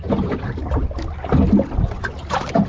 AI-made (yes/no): no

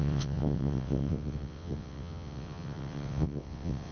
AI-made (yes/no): yes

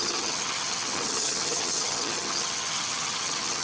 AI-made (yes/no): yes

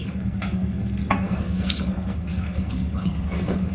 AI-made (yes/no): yes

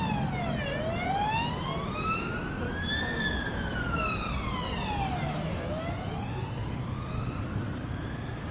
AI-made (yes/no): no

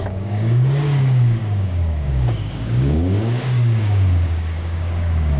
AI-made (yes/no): yes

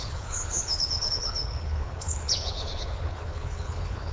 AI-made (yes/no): yes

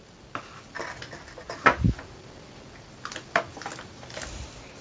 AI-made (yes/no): no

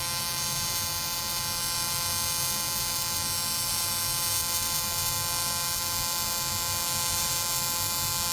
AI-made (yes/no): no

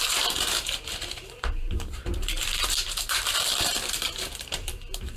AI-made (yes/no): yes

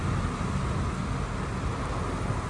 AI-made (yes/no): no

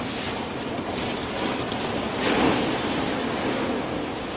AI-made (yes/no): no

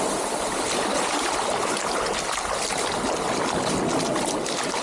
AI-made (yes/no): no